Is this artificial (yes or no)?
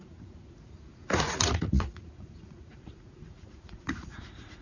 yes